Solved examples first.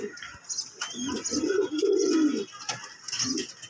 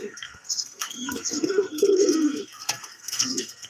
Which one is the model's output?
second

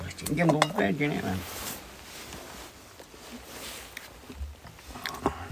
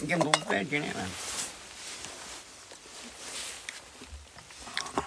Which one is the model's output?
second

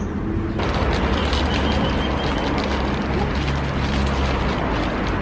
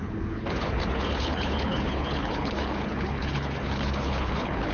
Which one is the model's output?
second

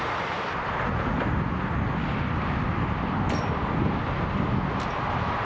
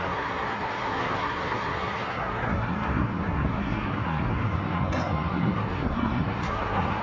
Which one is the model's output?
second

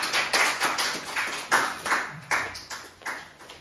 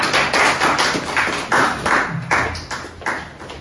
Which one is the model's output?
first